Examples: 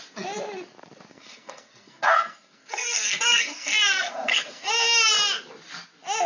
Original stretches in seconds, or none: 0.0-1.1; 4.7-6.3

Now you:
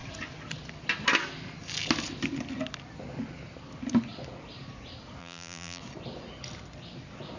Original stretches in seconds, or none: 0.0-5.2; 5.8-7.4